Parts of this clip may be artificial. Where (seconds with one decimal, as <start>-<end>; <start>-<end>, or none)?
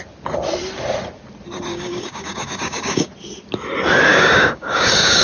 1.7-3.1; 4.1-5.2